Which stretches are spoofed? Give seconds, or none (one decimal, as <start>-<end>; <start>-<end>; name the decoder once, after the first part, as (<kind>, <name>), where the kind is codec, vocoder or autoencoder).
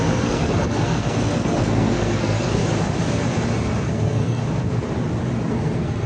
0.0-2.6 (codec, SNAC); 3.8-4.4; 5.5-6.1